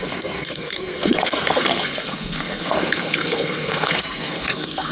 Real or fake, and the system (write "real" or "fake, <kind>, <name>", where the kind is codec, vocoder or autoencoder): fake, codec, SNAC